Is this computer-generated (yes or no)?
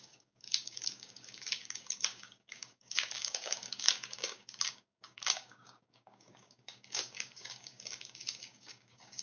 yes